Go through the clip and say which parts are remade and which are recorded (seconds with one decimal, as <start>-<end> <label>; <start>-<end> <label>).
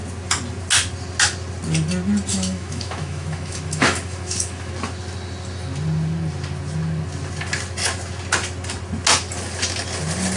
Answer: 0.0-2.3 recorded; 2.3-4.7 remade; 4.7-10.4 recorded